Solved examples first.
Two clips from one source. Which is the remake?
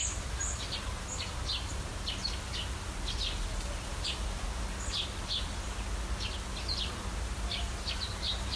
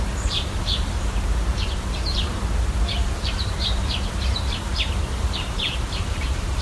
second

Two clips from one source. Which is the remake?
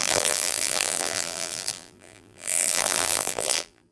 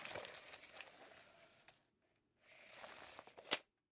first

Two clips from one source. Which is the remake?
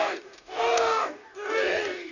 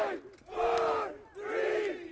first